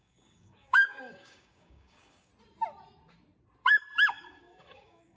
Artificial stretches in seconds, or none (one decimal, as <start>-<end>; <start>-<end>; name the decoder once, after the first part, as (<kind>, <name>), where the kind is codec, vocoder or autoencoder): 0.0-2.3 (codec, DAC); 4.1-5.2